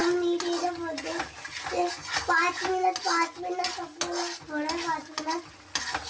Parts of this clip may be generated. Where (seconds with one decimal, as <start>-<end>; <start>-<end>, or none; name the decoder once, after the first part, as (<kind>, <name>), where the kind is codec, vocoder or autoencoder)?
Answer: none